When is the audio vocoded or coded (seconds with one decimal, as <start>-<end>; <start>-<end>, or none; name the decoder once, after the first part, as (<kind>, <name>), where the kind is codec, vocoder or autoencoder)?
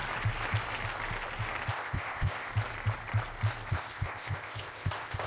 1.7-2.5 (codec, ZipCodec); 3.7-5.3